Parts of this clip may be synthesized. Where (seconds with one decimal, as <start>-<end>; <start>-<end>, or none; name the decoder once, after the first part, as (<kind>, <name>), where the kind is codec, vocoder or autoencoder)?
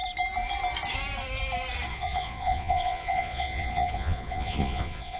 1.9-5.2 (vocoder, Vocos)